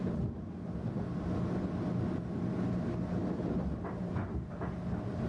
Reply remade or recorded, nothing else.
recorded